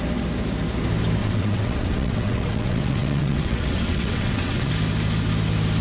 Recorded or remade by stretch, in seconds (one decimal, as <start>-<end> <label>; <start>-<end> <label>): 0.0-1.2 recorded; 1.2-4.7 remade; 4.7-5.8 recorded